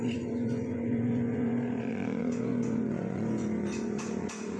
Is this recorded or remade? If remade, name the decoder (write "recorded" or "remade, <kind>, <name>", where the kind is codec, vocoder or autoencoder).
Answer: remade, vocoder, Vocos